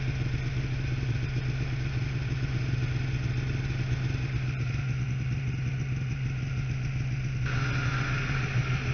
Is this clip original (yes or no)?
yes